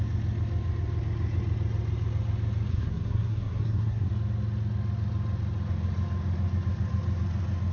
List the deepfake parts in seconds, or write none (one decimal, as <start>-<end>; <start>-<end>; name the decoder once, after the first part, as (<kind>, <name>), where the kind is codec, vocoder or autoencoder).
2.7-4.1 (codec, SNAC)